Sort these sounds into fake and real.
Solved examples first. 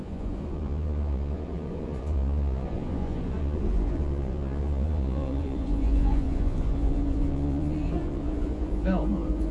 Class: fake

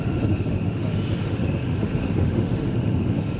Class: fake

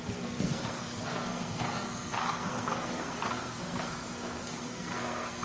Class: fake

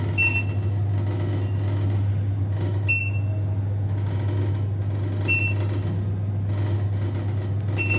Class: real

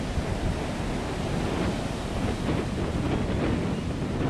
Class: real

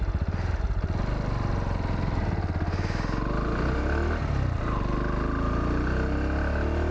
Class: real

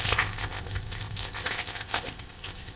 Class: fake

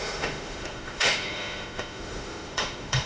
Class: fake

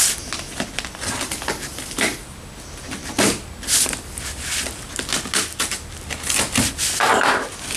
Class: real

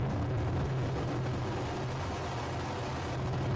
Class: real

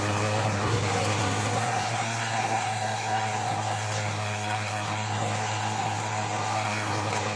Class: fake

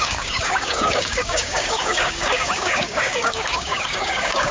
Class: fake